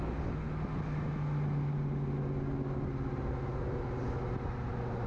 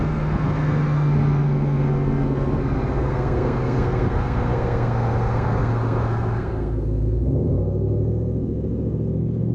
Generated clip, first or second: second